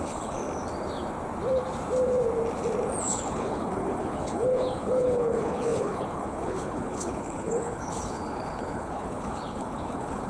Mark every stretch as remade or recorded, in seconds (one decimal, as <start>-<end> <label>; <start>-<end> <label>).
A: 0.0-0.4 remade; 0.4-3.0 recorded; 3.0-10.3 remade